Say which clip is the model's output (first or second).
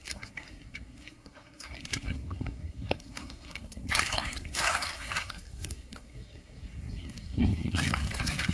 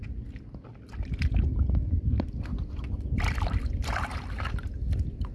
first